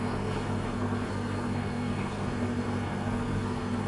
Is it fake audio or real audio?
fake